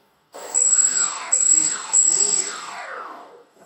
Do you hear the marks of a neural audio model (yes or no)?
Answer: yes